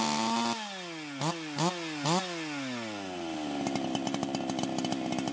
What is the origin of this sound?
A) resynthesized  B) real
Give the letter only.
B